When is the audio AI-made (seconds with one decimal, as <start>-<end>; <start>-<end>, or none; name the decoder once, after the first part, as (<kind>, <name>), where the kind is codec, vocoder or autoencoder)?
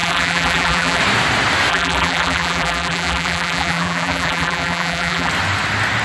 0.0-1.0 (vocoder, BigVGAN v2); 1.7-5.3